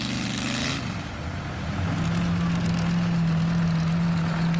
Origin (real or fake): real